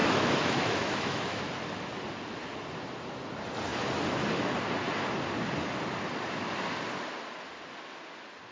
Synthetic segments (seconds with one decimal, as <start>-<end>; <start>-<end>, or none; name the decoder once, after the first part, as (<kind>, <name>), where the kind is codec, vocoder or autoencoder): 0.0-1.4 (autoencoder, DAC-VAE)